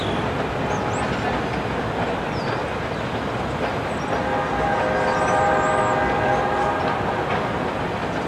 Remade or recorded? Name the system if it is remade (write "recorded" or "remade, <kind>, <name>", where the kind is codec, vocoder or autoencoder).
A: recorded